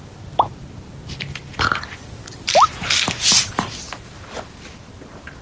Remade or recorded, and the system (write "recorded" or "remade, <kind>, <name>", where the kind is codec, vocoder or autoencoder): recorded